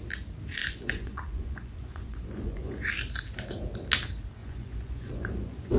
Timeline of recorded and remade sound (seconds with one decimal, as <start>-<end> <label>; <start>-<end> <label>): 0.0-0.6 recorded; 0.6-2.9 remade; 2.9-4.4 recorded; 4.4-5.8 remade